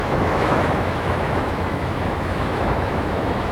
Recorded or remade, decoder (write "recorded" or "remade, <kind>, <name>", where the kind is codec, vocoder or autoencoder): remade, autoencoder, DAC-VAE